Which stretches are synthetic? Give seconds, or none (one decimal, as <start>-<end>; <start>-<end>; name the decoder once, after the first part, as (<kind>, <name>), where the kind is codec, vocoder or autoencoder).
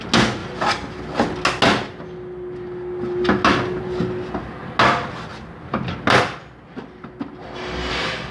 6.4-7.9 (vocoder, BigVGAN v2)